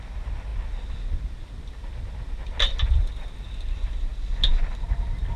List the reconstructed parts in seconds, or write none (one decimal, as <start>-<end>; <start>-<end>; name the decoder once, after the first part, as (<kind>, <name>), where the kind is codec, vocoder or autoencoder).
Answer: none